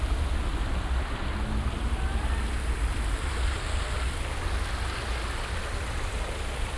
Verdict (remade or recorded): recorded